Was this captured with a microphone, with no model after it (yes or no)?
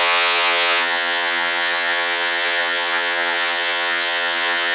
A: no